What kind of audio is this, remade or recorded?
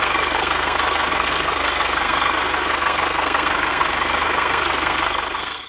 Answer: remade